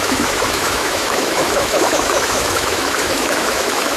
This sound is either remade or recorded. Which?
remade